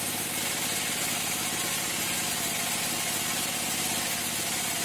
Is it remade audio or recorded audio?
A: recorded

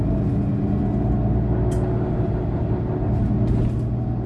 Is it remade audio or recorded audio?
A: recorded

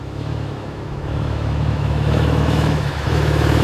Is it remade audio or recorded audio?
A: remade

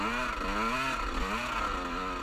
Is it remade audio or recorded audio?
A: recorded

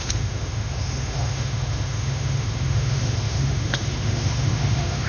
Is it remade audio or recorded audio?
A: remade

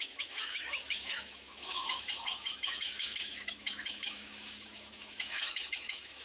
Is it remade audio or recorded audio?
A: remade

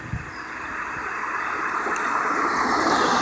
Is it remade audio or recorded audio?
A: recorded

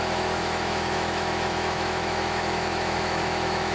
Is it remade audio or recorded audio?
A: remade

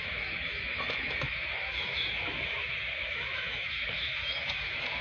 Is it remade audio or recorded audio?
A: remade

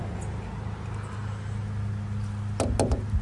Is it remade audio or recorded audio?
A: recorded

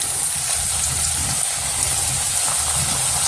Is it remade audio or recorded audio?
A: recorded